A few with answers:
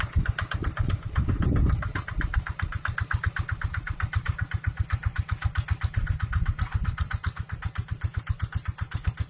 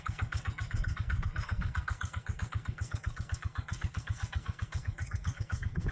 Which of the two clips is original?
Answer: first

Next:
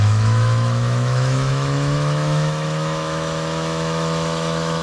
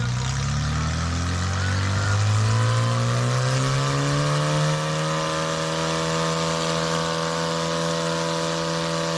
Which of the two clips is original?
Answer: second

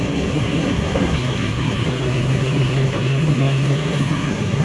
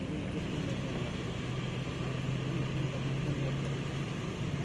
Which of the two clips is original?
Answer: second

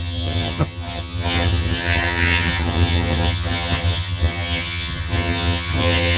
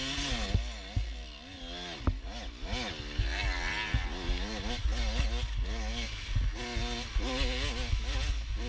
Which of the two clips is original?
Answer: second